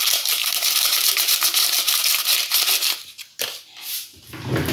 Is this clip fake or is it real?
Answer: real